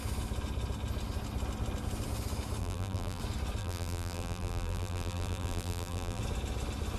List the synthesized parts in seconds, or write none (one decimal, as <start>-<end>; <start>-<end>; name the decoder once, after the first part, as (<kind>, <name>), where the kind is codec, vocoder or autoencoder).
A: 2.6-3.2 (vocoder, BigVGAN v2); 3.6-6.2